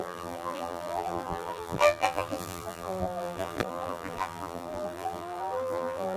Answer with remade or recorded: remade